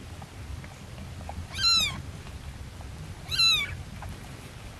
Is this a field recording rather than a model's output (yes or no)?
yes